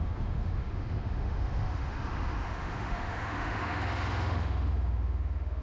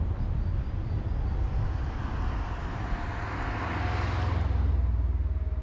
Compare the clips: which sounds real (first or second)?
second